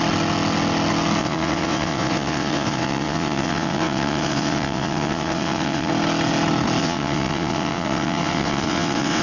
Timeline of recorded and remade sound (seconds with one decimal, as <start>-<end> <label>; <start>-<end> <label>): 0.0-1.2 recorded; 1.2-5.9 remade; 5.9-6.8 recorded; 6.8-9.2 remade

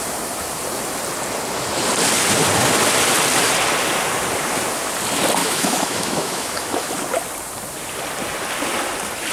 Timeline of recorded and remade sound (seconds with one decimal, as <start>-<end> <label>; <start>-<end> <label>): 0.0-5.4 recorded; 5.4-6.9 remade; 6.9-9.3 recorded

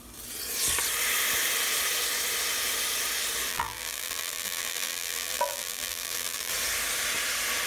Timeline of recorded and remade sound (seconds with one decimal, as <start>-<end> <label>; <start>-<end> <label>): 0.0-3.5 recorded; 3.5-6.5 remade; 6.5-7.7 recorded

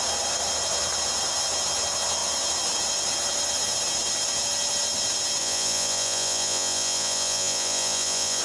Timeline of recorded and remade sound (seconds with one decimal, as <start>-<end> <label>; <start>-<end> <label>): 0.0-5.4 recorded; 5.4-8.4 remade

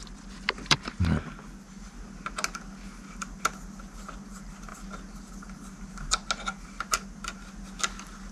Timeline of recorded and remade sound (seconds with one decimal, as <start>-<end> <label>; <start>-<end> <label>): 0.0-8.3 recorded

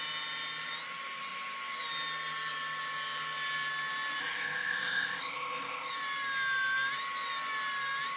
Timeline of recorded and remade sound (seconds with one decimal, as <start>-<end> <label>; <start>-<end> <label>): 0.0-4.2 recorded; 4.2-5.9 remade; 5.9-8.2 recorded